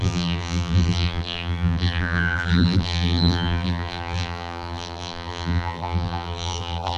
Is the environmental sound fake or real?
fake